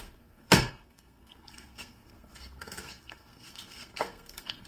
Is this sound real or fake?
fake